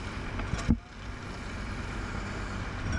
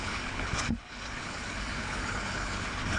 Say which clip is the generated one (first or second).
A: second